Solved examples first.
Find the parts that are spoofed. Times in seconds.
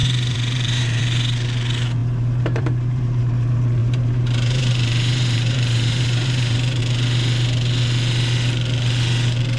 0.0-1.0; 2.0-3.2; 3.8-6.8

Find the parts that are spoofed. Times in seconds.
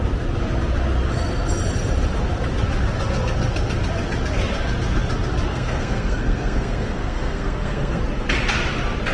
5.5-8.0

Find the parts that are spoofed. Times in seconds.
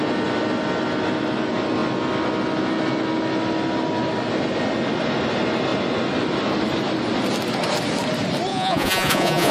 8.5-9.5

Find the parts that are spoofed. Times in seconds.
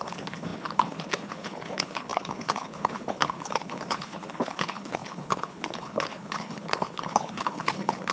0.0-8.1